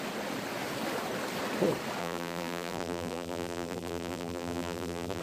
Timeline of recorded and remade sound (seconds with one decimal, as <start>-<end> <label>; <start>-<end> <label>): 0.0-2.0 recorded; 2.0-5.2 remade